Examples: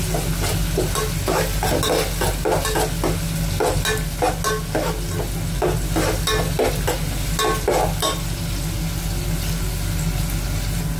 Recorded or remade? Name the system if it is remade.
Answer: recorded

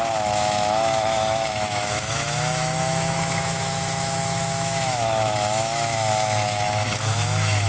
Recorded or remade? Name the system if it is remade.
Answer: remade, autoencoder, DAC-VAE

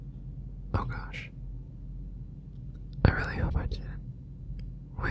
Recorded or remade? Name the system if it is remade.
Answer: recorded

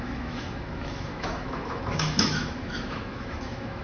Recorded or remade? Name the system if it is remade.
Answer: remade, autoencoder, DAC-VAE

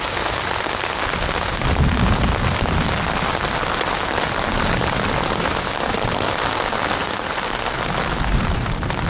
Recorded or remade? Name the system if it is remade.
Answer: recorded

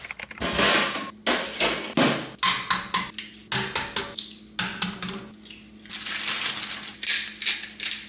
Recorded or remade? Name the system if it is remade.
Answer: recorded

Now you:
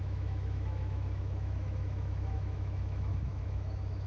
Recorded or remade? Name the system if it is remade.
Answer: remade, autoencoder, DAC-VAE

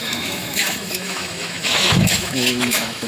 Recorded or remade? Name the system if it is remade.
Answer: remade, autoencoder, DAC-VAE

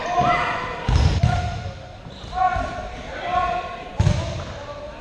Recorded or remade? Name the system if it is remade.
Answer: recorded